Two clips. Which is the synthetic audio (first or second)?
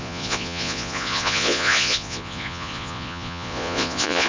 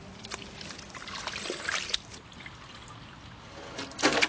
first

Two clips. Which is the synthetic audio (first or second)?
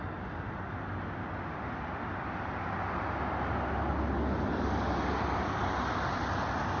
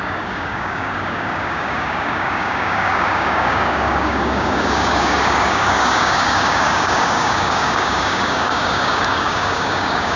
second